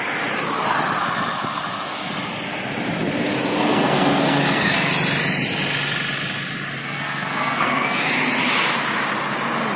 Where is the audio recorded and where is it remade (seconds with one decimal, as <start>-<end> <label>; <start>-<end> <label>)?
0.0-3.6 recorded; 3.6-4.9 remade; 4.9-6.8 recorded; 6.8-8.0 remade; 8.0-9.8 recorded